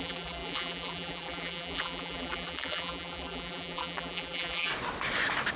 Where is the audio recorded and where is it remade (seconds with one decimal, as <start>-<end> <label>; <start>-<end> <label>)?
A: 0.0-4.7 remade; 4.7-5.6 recorded